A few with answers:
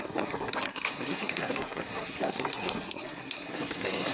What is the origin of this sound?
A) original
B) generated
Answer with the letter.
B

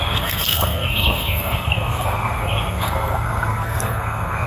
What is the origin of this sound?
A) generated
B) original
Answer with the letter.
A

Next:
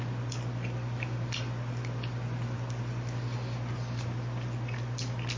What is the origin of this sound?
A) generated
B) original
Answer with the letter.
B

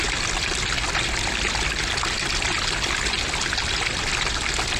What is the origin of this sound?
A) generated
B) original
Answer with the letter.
B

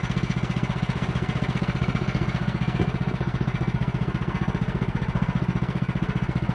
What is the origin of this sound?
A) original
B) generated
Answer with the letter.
B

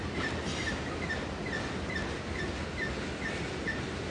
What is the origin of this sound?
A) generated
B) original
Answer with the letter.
B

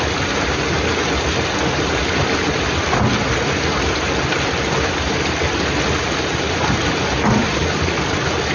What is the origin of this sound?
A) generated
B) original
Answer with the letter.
B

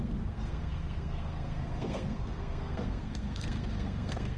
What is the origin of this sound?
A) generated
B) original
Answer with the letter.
A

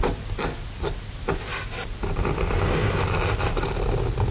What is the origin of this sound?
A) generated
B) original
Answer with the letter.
B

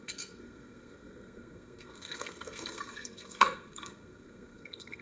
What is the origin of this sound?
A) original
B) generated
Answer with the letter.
B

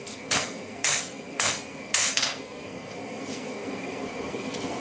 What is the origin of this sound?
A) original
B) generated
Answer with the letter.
B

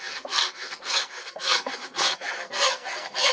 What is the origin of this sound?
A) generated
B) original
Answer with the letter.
A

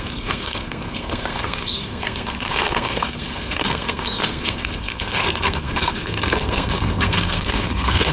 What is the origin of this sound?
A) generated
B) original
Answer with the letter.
A